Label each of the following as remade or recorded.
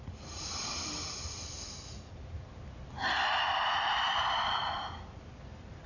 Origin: recorded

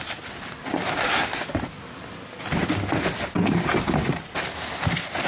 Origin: recorded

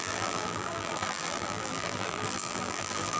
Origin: remade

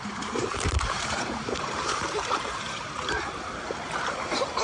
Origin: remade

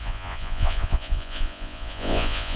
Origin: remade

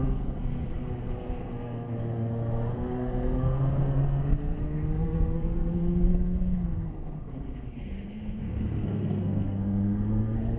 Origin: remade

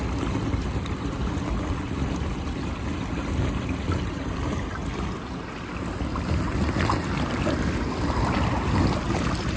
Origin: recorded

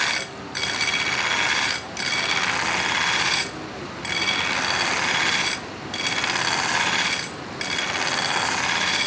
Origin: recorded